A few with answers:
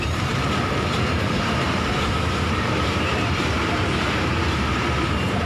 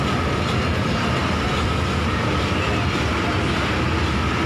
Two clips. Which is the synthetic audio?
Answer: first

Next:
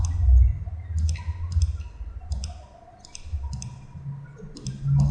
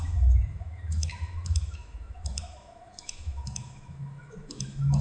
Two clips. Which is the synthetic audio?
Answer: second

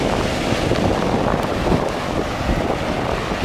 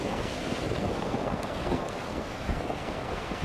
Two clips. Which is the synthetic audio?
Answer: second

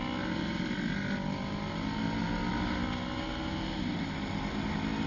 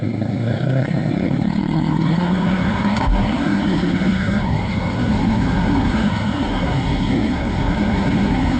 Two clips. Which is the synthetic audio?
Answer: second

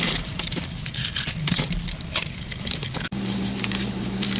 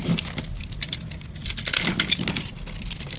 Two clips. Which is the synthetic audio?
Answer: first